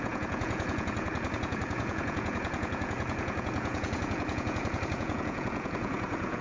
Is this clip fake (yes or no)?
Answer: yes